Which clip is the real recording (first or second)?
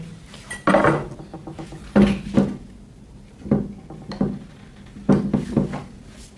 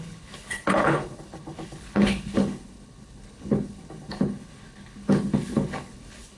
first